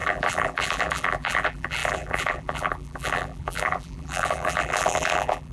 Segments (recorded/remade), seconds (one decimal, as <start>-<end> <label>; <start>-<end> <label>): 0.0-5.5 remade